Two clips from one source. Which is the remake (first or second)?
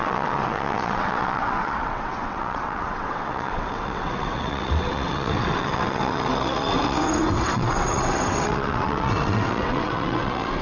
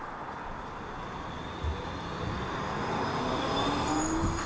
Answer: first